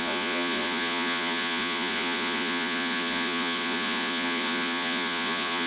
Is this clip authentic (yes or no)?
no